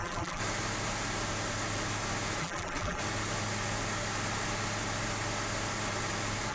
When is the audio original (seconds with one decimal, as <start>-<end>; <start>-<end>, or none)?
0.4-2.4; 3.0-6.5